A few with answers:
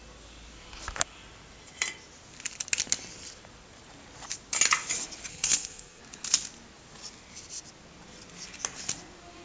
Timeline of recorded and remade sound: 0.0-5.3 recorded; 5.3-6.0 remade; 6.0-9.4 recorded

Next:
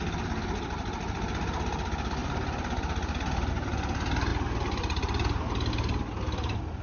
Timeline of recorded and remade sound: 0.0-6.8 recorded

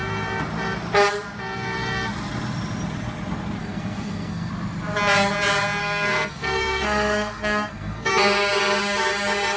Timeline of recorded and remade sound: 0.0-3.6 recorded; 3.6-4.5 remade; 4.5-5.8 recorded; 5.8-8.1 remade; 8.1-9.6 recorded

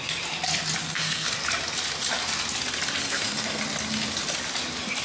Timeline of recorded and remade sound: 0.0-0.8 recorded; 0.8-1.3 remade; 1.3-3.0 recorded; 3.0-3.6 remade; 3.6-5.0 recorded

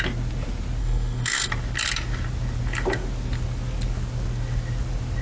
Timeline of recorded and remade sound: 0.0-0.8 recorded; 0.8-1.5 remade; 1.5-5.2 recorded